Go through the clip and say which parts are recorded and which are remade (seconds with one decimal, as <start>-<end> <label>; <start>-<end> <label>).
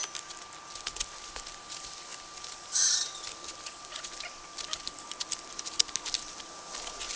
0.0-7.2 recorded